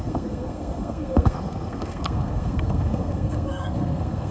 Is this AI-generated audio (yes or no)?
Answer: yes